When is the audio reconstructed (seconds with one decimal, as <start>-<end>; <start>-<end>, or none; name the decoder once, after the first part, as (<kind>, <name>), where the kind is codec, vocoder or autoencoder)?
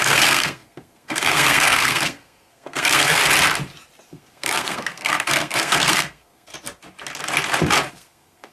0.0-3.2 (codec, SNAC); 4.1-6.5; 7.9-8.5